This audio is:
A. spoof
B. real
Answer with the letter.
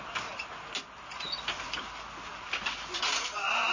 B